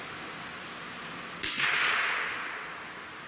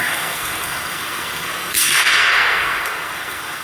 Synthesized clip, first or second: second